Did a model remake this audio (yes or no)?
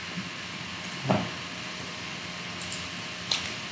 no